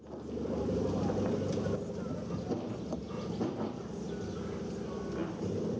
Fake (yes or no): no